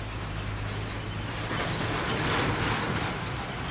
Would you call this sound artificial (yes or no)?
no